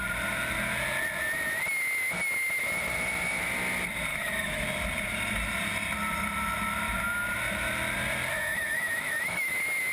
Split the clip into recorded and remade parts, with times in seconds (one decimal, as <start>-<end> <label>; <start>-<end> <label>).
0.0-4.1 recorded; 4.1-4.6 remade; 4.6-8.3 recorded; 8.3-9.5 remade; 9.5-9.9 recorded